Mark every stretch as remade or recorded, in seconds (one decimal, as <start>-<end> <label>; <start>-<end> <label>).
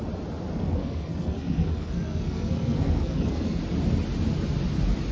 0.0-0.5 recorded; 0.5-3.6 remade; 3.6-5.1 recorded